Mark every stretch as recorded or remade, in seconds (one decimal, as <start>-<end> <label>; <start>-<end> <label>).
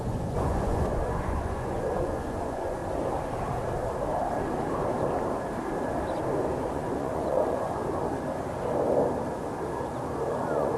0.0-2.8 remade; 2.8-6.7 recorded; 6.7-7.8 remade; 7.8-10.3 recorded; 10.3-10.8 remade